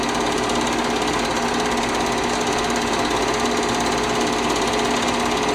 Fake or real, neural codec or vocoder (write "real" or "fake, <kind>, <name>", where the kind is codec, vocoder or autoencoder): real